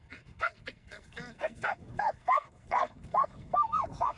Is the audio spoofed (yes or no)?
yes